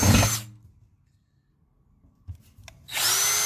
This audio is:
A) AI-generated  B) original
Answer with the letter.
B